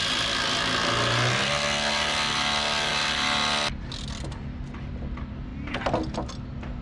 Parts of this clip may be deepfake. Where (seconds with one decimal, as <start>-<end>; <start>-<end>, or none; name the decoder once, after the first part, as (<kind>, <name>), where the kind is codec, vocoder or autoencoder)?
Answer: none